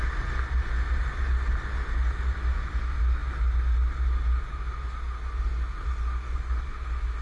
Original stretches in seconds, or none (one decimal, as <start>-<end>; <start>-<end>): 0.0-7.2